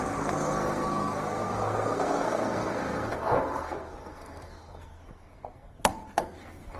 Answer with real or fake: fake